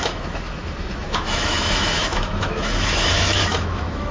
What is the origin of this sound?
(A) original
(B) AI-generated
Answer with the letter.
B